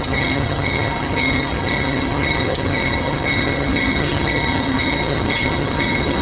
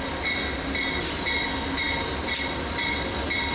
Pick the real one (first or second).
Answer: second